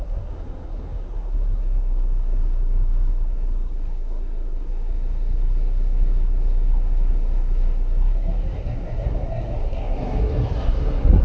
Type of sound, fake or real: fake